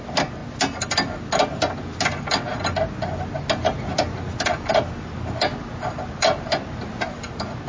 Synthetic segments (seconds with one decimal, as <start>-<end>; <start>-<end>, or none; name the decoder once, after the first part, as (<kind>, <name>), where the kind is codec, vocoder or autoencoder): none